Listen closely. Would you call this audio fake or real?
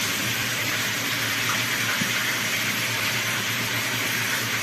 fake